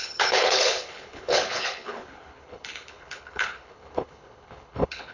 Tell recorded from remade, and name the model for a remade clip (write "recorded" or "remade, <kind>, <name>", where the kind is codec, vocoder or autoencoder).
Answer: remade, codec, HILCodec